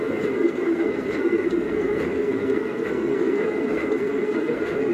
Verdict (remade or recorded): remade